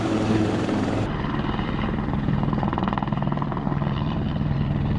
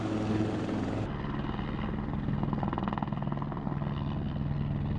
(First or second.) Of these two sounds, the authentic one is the second